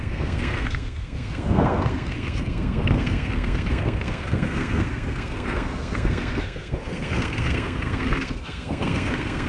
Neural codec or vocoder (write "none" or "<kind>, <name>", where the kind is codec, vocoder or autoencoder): codec, SNAC